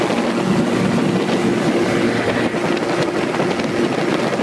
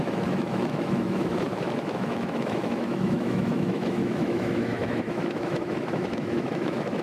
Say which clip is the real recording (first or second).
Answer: first